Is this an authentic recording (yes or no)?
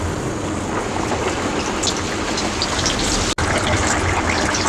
yes